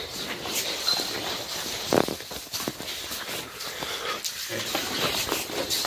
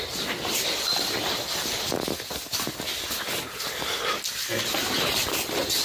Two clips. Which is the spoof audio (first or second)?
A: first